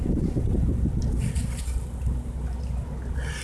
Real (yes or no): yes